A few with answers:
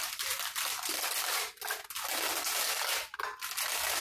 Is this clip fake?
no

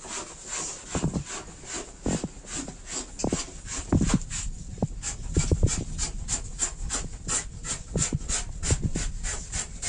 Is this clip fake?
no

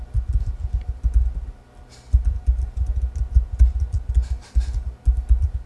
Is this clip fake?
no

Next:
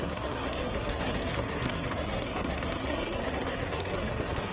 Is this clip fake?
yes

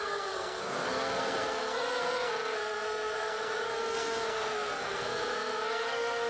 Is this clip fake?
yes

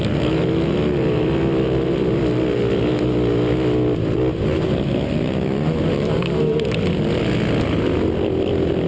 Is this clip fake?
no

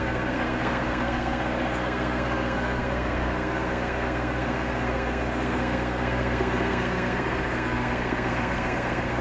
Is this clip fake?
yes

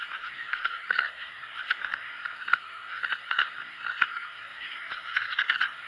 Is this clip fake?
yes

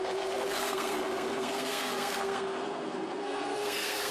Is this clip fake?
yes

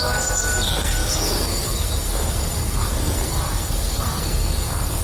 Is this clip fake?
yes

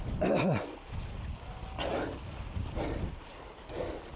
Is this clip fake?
no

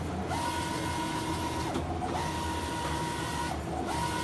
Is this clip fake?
no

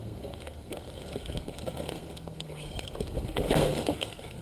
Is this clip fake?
yes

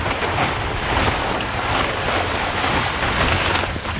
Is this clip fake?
no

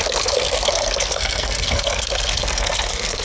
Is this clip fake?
yes